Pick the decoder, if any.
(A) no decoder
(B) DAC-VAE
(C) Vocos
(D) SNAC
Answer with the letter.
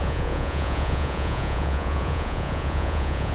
C